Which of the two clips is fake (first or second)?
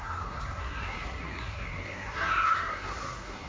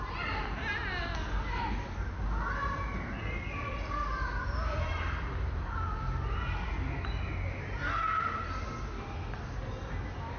first